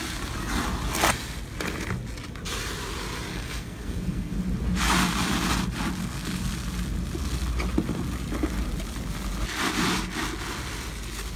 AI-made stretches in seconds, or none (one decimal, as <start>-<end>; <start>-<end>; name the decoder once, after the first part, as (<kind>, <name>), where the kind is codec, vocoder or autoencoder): 3.3-4.3 (codec, SNAC); 6.0-6.5